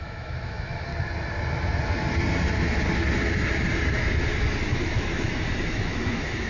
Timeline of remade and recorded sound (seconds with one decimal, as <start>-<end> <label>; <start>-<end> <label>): 0.0-0.9 remade; 0.9-4.8 recorded; 4.8-6.5 remade